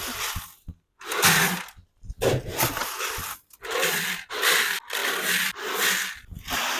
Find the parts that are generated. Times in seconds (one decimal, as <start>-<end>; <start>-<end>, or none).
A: none